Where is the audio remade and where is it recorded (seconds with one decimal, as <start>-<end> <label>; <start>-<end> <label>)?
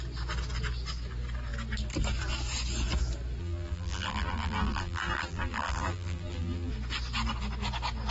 0.0-3.4 recorded; 3.4-6.7 remade; 6.7-8.1 recorded